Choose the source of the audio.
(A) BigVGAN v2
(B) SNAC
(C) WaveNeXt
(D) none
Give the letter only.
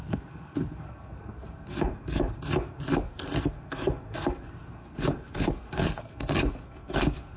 B